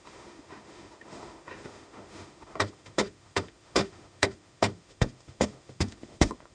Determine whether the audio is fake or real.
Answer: fake